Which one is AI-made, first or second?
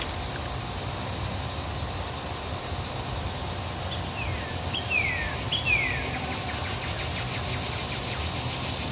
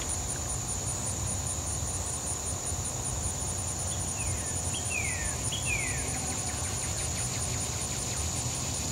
second